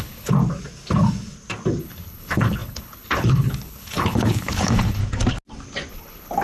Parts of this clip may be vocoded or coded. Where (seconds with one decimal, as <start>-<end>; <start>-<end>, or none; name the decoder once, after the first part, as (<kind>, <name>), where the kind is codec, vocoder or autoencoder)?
0.0-0.4 (codec, HILCodec); 1.8-5.0; 5.9-6.4